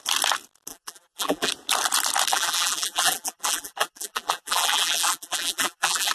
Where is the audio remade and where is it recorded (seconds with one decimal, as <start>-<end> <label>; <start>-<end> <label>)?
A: 0.0-0.7 recorded; 0.7-1.5 remade; 1.5-2.3 recorded; 2.3-6.1 remade